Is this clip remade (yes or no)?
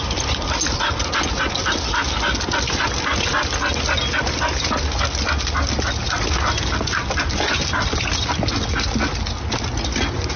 no